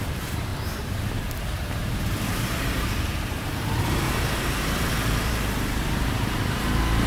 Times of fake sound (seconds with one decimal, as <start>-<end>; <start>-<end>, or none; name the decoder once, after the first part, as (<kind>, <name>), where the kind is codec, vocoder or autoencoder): 0.0-7.1 (vocoder, BigVGAN v2)